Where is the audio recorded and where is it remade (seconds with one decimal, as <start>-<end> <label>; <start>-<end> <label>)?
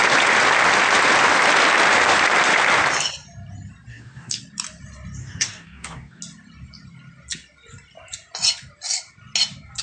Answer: 0.0-3.9 recorded; 3.9-4.4 remade; 4.4-5.2 recorded; 5.2-6.2 remade; 6.2-9.8 recorded